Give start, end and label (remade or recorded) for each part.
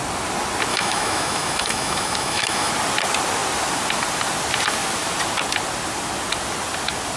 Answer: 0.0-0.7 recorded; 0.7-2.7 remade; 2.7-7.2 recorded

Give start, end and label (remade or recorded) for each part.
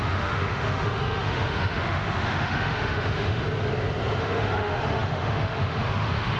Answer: 0.0-3.4 remade; 3.4-4.2 recorded; 4.2-6.4 remade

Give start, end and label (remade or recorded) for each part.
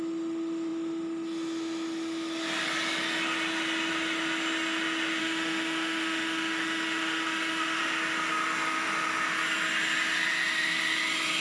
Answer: 0.0-5.2 recorded; 5.2-7.8 remade; 7.8-11.4 recorded